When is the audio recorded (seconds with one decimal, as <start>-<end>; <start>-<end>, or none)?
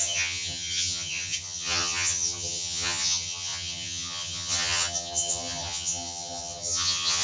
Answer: none